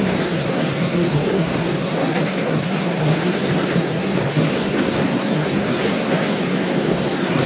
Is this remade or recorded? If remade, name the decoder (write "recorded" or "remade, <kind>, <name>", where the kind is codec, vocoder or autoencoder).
remade, codec, SNAC